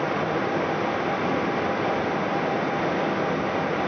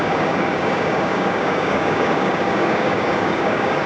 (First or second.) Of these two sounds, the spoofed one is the second